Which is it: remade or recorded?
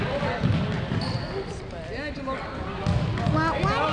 recorded